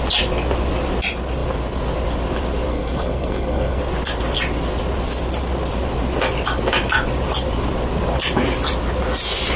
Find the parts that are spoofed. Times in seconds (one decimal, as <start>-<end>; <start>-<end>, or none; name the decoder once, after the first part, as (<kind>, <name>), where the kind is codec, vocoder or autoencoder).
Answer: 2.7-3.8 (codec, SNAC)